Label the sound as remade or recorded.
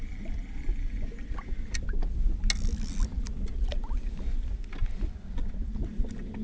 recorded